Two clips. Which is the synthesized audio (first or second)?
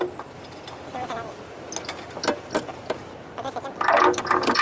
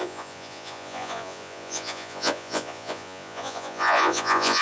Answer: second